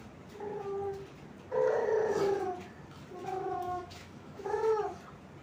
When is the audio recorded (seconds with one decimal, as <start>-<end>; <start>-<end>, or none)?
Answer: 0.0-3.2; 4.8-5.4